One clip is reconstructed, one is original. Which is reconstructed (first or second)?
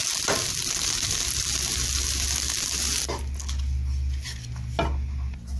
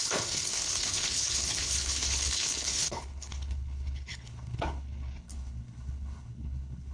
second